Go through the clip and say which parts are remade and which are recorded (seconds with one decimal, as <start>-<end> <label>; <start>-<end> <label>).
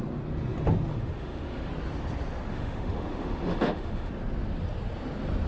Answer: 0.0-0.9 recorded; 0.9-1.7 remade; 1.7-2.5 recorded; 2.5-4.1 remade; 4.1-5.5 recorded